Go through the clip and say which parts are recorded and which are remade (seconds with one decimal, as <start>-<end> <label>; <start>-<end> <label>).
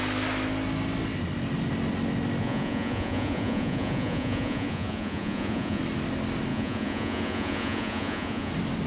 0.0-2.4 recorded; 2.4-5.8 remade; 5.8-6.5 recorded; 6.5-8.5 remade; 8.5-8.9 recorded